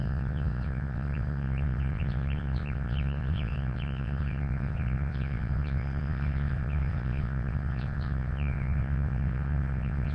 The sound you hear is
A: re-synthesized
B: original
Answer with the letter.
A